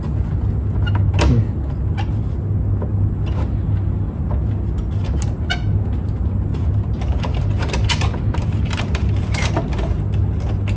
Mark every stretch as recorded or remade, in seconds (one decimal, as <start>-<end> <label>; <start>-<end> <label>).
0.0-6.5 recorded; 6.5-9.5 remade; 9.5-10.8 recorded